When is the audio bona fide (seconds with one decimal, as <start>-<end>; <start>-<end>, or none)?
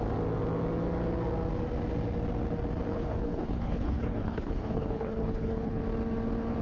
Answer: 0.0-2.9; 5.8-6.6